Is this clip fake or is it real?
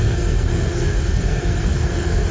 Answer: fake